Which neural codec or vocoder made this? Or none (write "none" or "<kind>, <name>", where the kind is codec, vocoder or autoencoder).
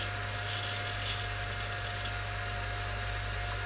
none